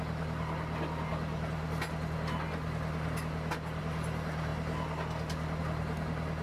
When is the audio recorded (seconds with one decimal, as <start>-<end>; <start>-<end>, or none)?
0.0-6.4